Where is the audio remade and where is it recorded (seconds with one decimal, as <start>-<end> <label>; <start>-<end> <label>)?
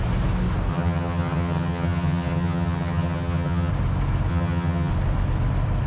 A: 0.0-0.7 recorded; 0.7-3.7 remade; 3.7-4.3 recorded; 4.3-4.9 remade; 4.9-5.9 recorded